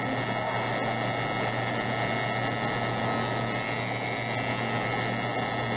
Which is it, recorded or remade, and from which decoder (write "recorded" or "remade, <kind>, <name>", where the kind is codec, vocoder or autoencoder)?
recorded